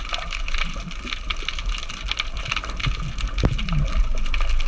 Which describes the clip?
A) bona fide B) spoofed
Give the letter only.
A